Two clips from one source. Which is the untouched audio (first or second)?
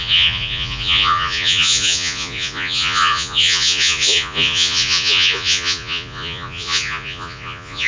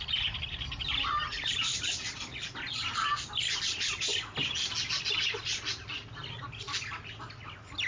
second